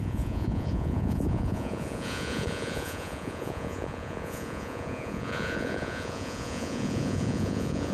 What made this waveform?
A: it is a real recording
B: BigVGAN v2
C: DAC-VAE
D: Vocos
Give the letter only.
D